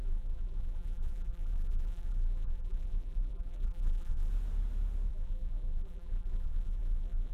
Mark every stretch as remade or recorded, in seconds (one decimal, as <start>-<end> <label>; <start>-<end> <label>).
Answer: 0.0-4.3 remade; 4.3-5.1 recorded; 5.1-7.3 remade